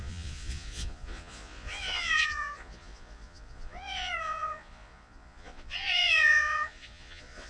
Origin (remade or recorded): remade